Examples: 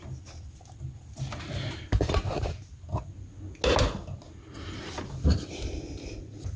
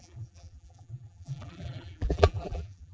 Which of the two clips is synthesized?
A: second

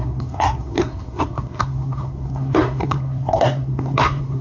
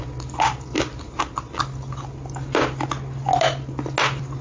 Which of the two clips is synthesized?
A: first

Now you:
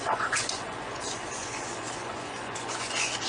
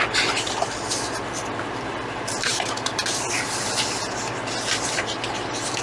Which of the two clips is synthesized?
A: first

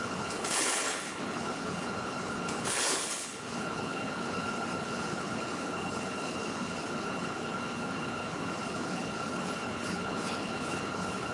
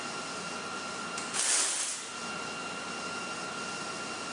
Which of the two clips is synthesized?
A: first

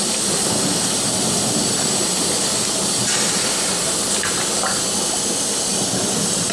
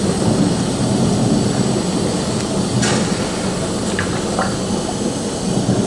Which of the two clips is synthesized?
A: first